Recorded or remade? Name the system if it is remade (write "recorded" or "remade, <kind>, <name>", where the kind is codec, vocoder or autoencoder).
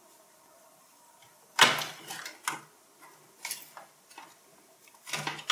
recorded